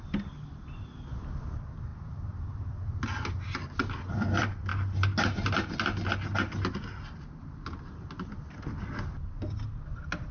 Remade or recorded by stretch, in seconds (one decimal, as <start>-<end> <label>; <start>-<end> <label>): 0.0-10.3 recorded